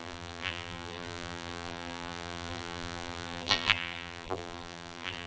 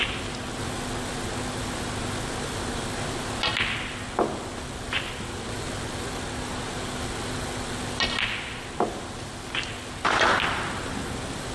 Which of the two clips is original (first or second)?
second